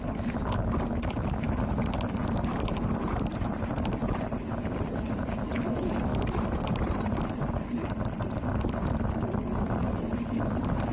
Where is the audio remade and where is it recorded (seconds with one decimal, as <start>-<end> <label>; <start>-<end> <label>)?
0.0-2.2 recorded; 2.2-5.3 remade; 5.3-6.1 recorded; 6.1-8.3 remade; 8.3-10.9 recorded